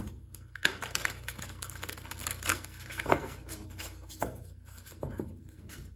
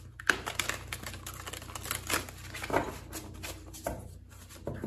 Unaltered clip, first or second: second